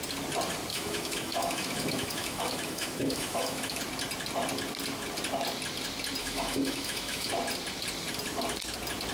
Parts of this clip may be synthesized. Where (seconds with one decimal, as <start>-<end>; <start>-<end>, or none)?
0.7-3.8; 6.2-7.3